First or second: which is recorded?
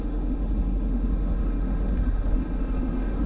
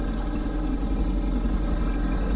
second